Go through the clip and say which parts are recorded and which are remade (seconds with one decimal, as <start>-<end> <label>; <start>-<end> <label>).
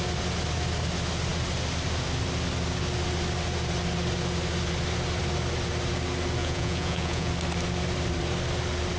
0.0-6.4 recorded; 6.4-7.3 remade; 7.3-9.0 recorded